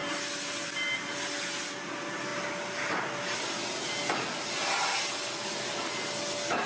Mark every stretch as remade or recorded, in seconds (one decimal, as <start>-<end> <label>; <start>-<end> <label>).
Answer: 0.0-6.7 recorded